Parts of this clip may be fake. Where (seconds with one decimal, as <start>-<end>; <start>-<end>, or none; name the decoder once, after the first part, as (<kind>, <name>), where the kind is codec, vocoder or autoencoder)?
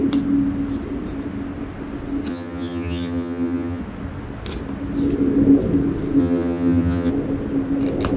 2.3-3.8 (vocoder, HiFi-GAN); 6.2-7.1